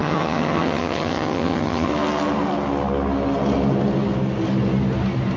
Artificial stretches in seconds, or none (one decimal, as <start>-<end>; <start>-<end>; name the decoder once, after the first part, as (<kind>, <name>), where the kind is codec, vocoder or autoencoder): 0.0-1.9 (vocoder, HiFi-GAN)